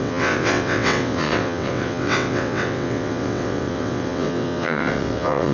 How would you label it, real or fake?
fake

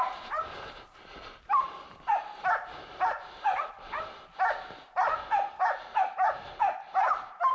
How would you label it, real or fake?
real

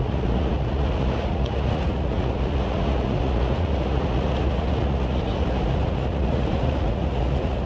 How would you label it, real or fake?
fake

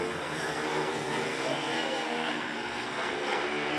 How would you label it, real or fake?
fake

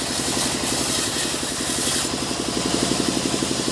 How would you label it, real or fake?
real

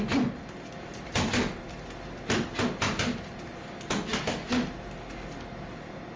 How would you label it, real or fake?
real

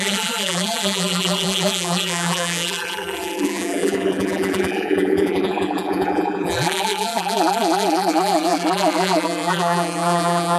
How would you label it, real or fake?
fake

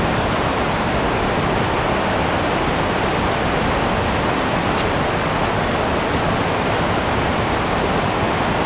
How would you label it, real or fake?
real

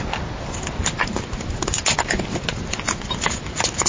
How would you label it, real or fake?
real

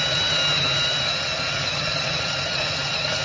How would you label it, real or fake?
real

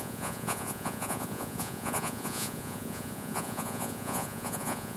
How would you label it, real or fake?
fake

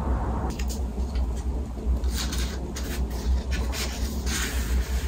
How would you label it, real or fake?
real